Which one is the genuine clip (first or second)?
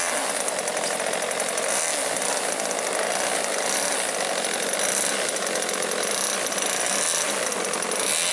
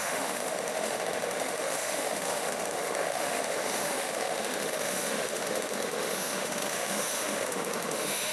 first